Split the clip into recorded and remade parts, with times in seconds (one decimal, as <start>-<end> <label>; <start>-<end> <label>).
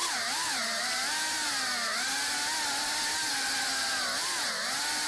0.0-5.1 recorded